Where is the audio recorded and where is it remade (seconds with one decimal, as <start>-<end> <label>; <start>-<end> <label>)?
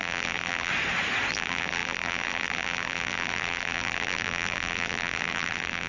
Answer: 0.0-0.7 remade; 0.7-1.3 recorded; 1.3-5.9 remade